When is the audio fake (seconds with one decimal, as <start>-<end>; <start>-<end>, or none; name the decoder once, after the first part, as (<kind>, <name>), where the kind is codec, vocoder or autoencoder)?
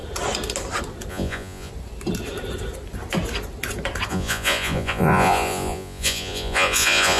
1.1-1.7 (vocoder, Vocos); 4.1-7.2